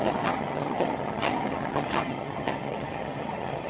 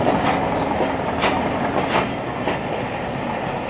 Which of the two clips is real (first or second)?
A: second